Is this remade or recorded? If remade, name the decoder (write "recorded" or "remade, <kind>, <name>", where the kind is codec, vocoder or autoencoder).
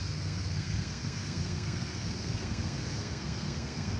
remade, codec, SNAC